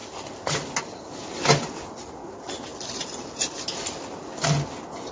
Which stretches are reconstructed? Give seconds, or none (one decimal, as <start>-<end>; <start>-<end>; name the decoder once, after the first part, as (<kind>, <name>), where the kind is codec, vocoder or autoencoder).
none